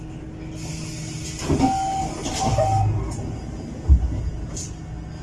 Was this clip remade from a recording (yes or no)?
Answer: no